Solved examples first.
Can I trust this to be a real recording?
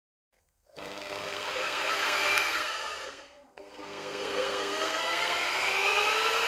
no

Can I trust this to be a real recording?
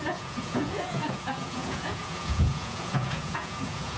no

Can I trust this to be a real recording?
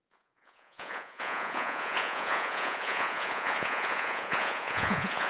no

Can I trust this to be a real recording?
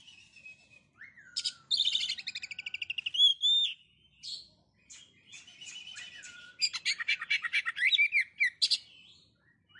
yes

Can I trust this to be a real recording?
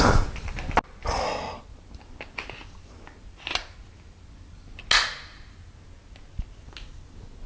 yes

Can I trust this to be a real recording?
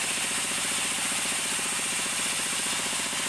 yes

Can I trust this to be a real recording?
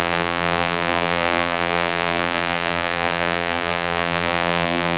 no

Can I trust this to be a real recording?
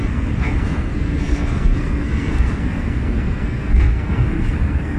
no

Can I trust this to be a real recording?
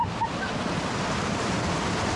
yes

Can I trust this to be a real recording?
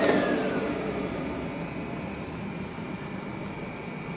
yes